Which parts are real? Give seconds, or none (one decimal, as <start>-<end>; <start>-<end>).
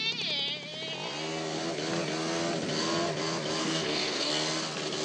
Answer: 0.0-3.6; 4.3-5.0